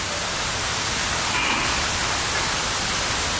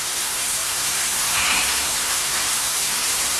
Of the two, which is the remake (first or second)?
second